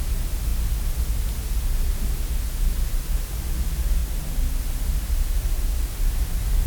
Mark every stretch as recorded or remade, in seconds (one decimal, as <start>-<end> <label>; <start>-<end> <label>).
0.0-6.7 recorded

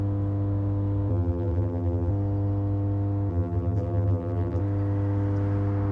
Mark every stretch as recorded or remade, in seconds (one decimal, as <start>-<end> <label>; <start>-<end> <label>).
0.0-1.1 recorded; 1.1-2.1 remade; 2.1-3.3 recorded; 3.3-4.6 remade; 4.6-5.9 recorded